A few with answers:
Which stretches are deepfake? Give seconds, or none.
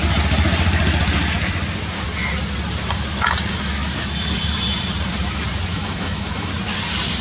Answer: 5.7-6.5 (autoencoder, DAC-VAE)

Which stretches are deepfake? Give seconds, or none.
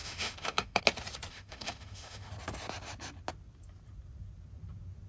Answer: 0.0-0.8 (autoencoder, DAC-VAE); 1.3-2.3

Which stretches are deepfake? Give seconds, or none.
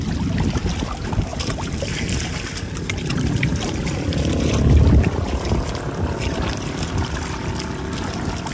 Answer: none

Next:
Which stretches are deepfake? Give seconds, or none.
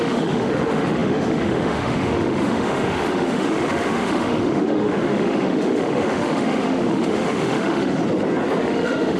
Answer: 0.0-8.0 (autoencoder, DAC-VAE); 8.6-9.2